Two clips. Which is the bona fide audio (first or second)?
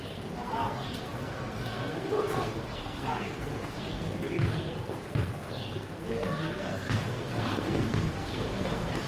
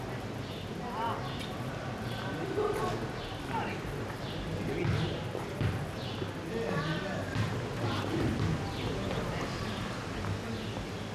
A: second